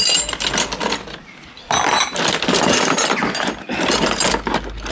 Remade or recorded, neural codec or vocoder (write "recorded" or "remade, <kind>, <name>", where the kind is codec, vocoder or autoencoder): recorded